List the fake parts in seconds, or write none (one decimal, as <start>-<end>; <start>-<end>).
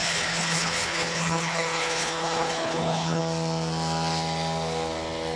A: 0.0-3.2